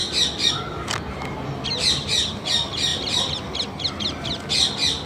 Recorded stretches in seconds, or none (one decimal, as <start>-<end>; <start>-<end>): 0.0-5.1